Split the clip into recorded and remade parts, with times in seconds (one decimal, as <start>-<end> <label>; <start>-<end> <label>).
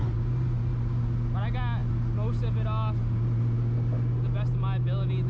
0.0-5.3 recorded